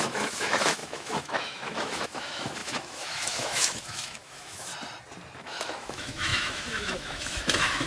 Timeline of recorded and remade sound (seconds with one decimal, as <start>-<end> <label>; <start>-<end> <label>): 0.0-4.7 remade; 4.7-5.4 recorded; 5.4-7.9 remade